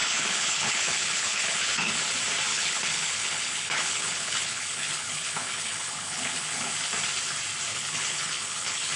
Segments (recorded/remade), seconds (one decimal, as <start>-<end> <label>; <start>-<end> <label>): 0.0-2.0 remade; 2.0-2.5 recorded; 2.5-6.7 remade; 6.7-7.7 recorded; 7.7-9.0 remade